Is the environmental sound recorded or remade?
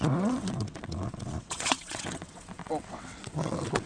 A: remade